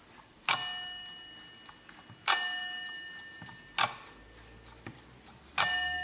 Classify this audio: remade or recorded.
recorded